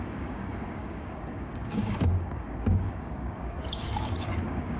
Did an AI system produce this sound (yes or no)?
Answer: yes